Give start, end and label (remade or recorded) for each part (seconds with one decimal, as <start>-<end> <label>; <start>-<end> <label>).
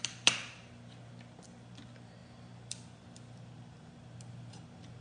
0.0-5.0 recorded